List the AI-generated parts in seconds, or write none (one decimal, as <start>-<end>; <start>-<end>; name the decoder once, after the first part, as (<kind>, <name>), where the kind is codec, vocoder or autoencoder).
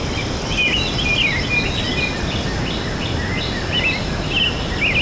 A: none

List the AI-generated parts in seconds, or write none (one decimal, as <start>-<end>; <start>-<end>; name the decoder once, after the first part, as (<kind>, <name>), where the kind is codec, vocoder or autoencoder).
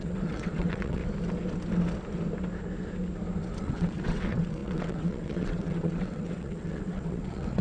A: 0.0-1.0 (vocoder, WaveNeXt); 3.6-7.6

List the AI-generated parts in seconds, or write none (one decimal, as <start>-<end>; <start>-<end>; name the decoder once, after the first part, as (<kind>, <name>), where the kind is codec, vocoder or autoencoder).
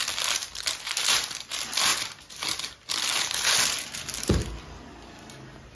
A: none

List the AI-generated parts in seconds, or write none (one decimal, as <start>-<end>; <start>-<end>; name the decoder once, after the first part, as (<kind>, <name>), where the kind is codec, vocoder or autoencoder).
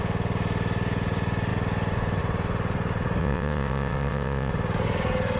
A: 3.2-4.5 (vocoder, WaveNeXt)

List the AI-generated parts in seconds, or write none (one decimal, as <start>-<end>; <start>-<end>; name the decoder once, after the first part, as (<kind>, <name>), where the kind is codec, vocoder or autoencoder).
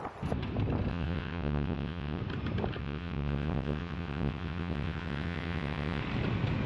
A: 0.9-2.2 (vocoder, WaveNeXt); 2.8-6.0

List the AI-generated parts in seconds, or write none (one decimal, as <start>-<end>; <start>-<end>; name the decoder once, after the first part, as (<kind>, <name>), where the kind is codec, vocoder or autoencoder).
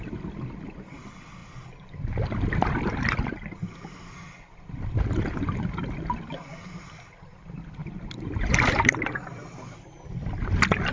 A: none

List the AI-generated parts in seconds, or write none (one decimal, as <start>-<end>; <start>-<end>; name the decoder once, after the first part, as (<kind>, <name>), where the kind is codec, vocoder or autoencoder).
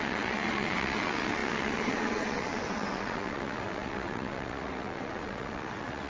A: 0.0-6.1 (vocoder, WaveNeXt)